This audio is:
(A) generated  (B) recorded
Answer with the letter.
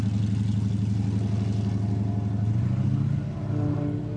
B